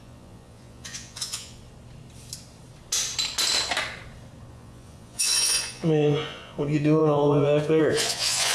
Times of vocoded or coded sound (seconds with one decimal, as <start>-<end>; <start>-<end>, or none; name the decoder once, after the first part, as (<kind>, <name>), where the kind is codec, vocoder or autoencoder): 0.0-1.6 (vocoder, Vocos); 4.5-8.5